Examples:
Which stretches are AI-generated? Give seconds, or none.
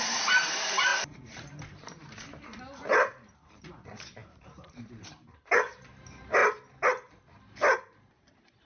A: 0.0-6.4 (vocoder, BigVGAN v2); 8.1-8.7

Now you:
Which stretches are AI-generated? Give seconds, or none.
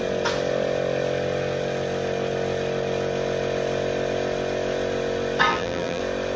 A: 5.5-6.0 (vocoder, BigVGAN v2)